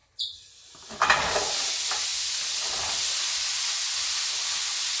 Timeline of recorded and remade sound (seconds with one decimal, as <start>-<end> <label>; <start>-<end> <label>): 0.0-2.1 remade; 2.1-4.6 recorded; 4.6-5.0 remade